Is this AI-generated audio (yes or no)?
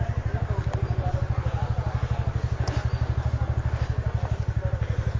no